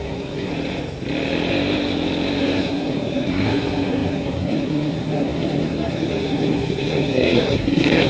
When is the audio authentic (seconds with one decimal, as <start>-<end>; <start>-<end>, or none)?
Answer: 0.5-2.4